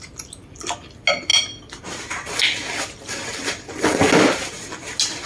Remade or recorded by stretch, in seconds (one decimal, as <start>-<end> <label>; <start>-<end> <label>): 0.0-5.3 recorded